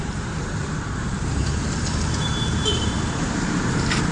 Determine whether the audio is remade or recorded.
remade